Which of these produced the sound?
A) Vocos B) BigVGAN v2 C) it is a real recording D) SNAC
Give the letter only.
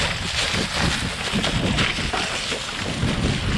C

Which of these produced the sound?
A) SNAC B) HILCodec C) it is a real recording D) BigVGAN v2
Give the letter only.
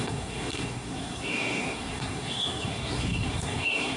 A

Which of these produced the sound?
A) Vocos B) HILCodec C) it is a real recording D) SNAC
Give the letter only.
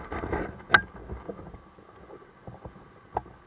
C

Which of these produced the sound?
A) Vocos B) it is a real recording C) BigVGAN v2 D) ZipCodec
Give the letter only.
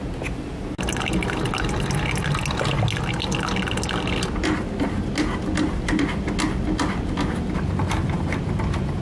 B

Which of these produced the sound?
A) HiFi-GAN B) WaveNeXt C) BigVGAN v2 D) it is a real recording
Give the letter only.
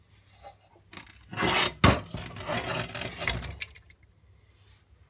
D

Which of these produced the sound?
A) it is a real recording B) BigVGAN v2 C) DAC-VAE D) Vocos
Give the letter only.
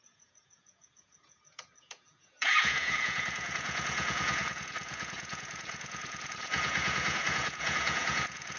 D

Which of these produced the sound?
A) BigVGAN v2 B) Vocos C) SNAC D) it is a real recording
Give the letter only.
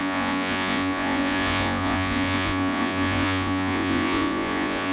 B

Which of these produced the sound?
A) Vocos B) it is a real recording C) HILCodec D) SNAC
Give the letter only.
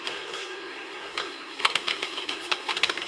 D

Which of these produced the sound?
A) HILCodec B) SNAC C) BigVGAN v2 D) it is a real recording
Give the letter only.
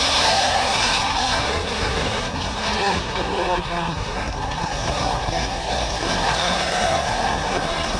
B